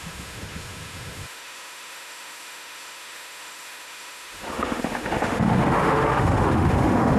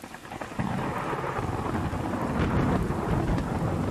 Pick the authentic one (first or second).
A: second